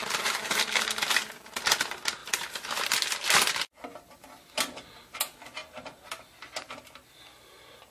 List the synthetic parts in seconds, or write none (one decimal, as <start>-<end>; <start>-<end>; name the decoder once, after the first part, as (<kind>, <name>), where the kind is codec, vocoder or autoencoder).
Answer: 2.2-3.5 (vocoder, BigVGAN v2)

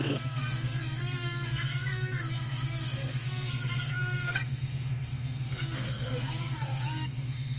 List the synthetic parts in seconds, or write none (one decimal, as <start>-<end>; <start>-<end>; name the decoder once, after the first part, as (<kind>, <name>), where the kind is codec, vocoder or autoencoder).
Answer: 0.0-7.6 (codec, SNAC)